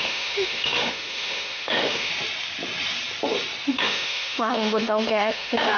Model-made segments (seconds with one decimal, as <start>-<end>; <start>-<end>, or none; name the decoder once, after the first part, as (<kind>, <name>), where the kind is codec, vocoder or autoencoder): 0.0-2.1 (autoencoder, DAC-VAE); 3.7-5.8